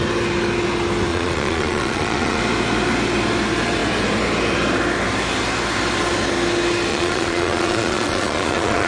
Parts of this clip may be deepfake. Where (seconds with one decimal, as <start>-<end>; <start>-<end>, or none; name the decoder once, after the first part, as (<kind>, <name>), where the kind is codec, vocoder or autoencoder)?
1.1-2.4 (vocoder, Vocos); 6.9-8.9

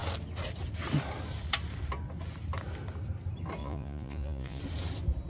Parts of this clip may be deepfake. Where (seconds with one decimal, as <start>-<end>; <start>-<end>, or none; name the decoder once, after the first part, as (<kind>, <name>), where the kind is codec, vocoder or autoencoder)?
3.6-4.6 (vocoder, Vocos)

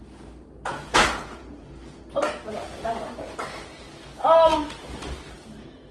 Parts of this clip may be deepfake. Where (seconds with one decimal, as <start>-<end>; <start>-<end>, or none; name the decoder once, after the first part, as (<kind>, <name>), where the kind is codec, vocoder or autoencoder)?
0.7-1.7 (vocoder, Vocos)

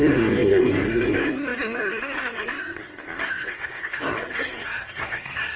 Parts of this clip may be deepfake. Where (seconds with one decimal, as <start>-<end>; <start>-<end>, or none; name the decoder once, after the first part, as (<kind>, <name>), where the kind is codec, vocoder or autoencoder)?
0.0-5.6 (codec, SNAC)

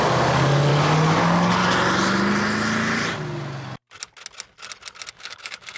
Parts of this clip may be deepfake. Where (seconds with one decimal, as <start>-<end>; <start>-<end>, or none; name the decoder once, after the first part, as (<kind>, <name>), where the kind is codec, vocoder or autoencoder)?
0.0-0.7 (codec, DAC); 1.2-1.6; 5.1-5.8